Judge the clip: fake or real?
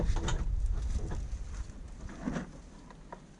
real